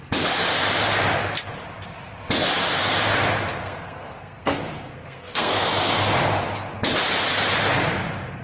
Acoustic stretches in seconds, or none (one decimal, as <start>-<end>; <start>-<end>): 0.0-3.6; 5.7-8.4